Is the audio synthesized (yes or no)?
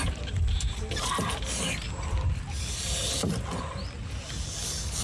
no